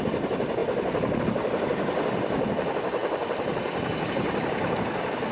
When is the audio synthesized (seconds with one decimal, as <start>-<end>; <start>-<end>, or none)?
none